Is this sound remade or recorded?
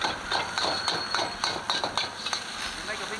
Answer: recorded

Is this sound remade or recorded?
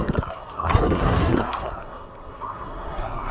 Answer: remade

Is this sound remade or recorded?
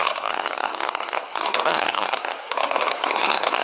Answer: remade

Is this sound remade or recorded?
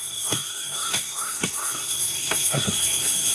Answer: remade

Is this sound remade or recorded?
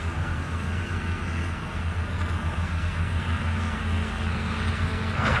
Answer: remade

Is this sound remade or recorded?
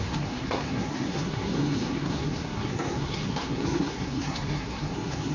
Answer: remade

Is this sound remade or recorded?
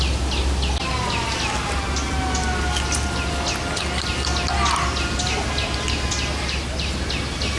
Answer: recorded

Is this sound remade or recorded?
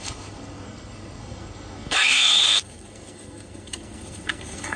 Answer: remade